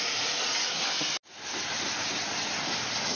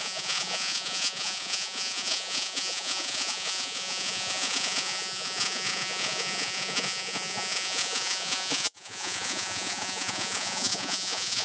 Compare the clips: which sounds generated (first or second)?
second